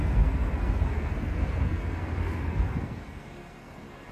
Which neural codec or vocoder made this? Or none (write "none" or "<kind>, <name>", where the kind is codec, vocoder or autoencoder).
codec, SNAC